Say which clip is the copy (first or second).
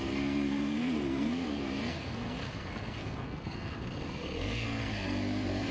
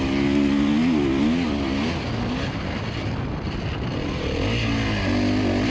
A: first